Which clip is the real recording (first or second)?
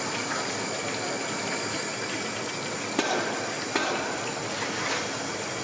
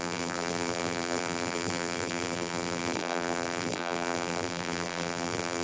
first